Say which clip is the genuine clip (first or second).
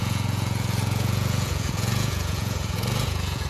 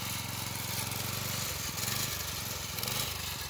second